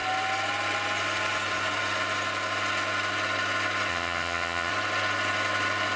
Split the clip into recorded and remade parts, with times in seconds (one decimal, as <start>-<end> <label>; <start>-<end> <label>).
0.0-3.9 recorded; 3.9-4.7 remade; 4.7-6.0 recorded